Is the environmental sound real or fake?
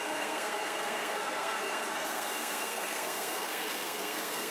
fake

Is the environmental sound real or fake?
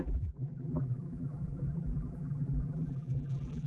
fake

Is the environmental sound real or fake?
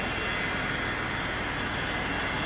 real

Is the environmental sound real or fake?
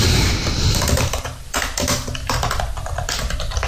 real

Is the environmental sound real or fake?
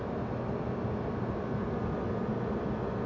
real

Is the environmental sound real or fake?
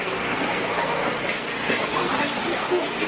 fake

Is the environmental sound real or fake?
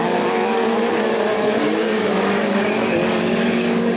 fake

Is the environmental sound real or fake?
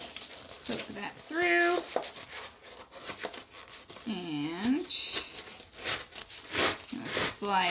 real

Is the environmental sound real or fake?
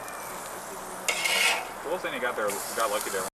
real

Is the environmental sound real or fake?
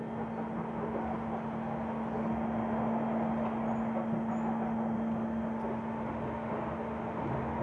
real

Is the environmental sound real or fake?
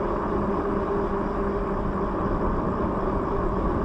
real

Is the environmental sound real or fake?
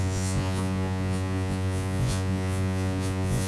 fake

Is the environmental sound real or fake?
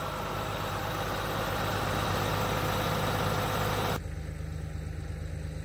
real